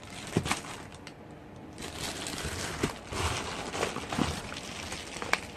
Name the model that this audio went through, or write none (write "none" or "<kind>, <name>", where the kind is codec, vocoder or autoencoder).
none